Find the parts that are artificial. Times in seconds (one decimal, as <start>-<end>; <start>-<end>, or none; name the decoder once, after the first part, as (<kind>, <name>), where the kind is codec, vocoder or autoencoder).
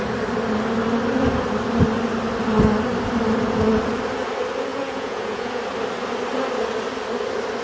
4.7-5.6 (vocoder, Vocos)